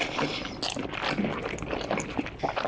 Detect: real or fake real